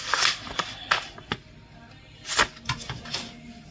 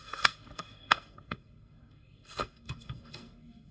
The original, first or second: first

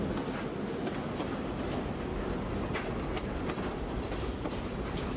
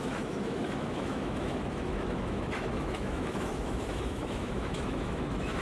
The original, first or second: first